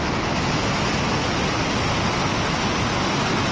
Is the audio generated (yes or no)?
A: no